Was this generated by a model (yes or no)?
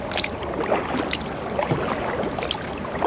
no